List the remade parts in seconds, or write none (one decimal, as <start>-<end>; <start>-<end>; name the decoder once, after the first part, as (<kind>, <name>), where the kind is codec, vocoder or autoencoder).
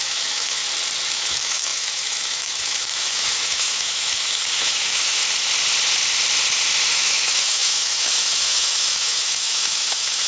0.0-0.6 (autoencoder, DAC-VAE); 1.1-5.2; 6.9-10.3